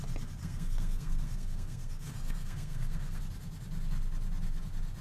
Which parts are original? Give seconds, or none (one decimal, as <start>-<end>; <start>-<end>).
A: 0.0-0.4; 3.2-5.0